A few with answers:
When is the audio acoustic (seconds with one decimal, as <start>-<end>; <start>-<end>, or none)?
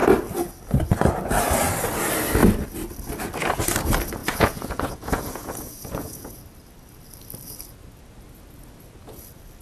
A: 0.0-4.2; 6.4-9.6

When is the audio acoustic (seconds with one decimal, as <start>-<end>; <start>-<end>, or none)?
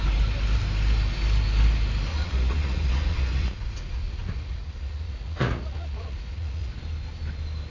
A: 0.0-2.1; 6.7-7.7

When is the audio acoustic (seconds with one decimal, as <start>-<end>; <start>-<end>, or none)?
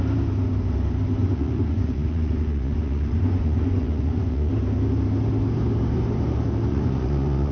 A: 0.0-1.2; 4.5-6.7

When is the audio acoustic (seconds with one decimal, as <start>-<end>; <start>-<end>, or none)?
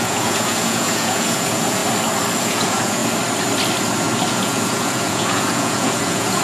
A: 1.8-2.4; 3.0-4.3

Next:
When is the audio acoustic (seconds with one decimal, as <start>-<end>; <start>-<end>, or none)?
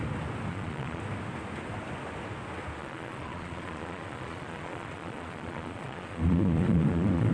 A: 0.0-0.5; 1.0-2.8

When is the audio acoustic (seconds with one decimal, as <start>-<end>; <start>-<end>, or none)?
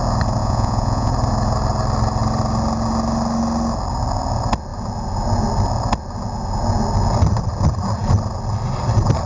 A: 0.0-0.4; 1.1-9.3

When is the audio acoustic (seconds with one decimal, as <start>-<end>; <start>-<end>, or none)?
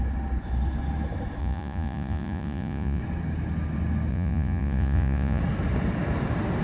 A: 0.0-1.4; 3.0-4.1; 5.4-6.6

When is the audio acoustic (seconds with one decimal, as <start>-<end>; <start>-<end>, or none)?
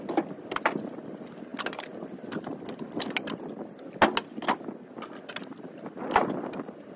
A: 0.0-7.0